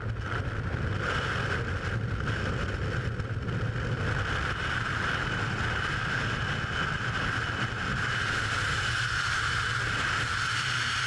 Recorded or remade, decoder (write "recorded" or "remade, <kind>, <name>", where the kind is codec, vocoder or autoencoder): recorded